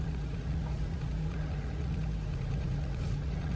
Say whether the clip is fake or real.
fake